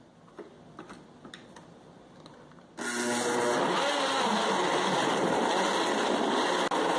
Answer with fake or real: real